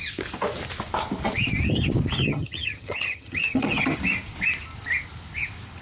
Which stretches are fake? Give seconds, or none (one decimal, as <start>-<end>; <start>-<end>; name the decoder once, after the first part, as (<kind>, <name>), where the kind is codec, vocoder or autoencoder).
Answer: 2.2-4.0 (vocoder, HiFi-GAN)